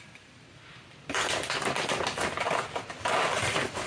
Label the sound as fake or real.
real